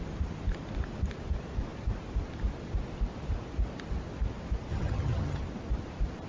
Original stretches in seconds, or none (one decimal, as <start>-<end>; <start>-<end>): 0.0-4.7; 5.4-6.3